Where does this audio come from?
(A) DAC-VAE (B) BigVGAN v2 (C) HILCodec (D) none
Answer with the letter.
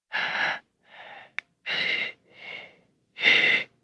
D